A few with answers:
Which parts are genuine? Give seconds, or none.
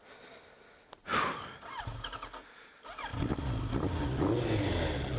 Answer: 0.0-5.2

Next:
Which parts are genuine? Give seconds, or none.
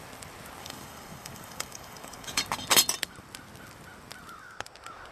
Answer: 0.0-0.6; 2.4-5.1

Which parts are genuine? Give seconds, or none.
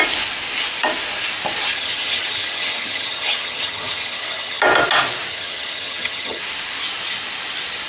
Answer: 0.0-1.7; 4.6-5.3; 6.4-7.9